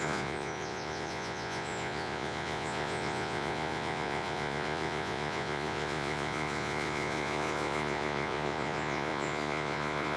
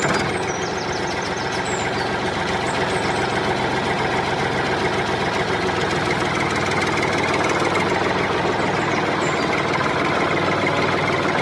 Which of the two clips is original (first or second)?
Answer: second